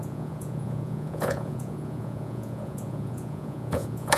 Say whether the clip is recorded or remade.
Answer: remade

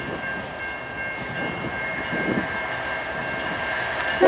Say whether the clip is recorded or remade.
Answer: recorded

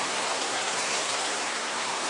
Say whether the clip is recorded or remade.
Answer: remade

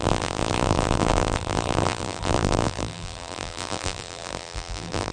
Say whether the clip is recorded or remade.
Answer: remade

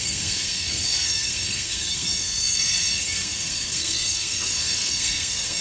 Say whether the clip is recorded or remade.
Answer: remade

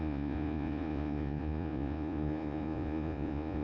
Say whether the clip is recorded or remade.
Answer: remade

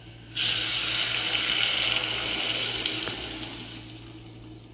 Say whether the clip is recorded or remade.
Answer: recorded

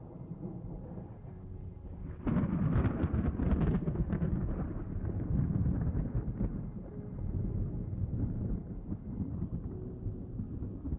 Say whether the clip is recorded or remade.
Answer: recorded